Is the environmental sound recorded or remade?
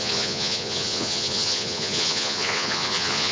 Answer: remade